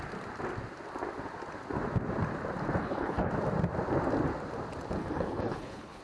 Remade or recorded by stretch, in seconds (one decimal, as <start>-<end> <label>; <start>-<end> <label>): 0.0-2.8 recorded; 2.8-3.3 remade; 3.3-5.0 recorded; 5.0-6.0 remade